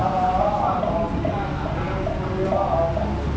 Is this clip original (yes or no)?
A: yes